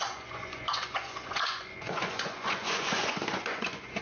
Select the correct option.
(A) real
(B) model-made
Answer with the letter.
B